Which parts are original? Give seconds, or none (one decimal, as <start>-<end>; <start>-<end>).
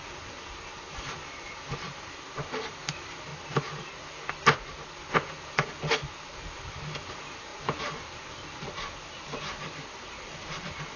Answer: 3.3-5.3